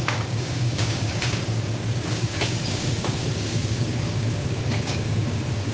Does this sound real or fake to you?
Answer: fake